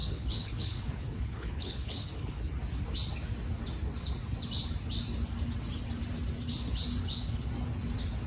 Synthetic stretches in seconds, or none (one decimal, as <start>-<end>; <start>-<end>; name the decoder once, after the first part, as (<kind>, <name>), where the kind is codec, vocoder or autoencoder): 0.0-2.4 (codec, HILCodec); 7.0-7.5